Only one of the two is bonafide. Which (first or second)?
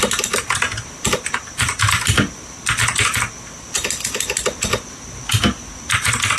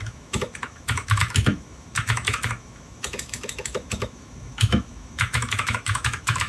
first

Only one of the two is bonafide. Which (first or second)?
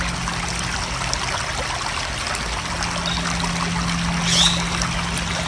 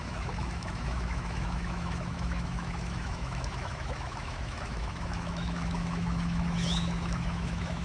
first